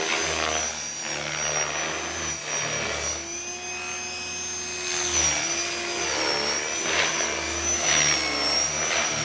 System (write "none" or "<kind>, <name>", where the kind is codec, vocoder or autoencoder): none